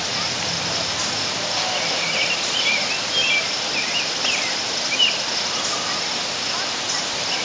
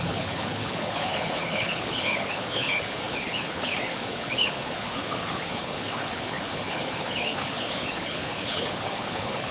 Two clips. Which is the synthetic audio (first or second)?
second